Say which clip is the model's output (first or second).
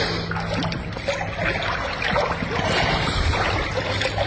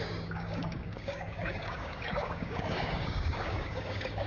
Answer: second